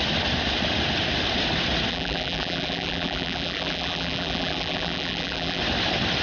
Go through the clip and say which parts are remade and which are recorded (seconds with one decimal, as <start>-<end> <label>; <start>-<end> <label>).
0.0-1.9 recorded; 1.9-5.6 remade; 5.6-6.2 recorded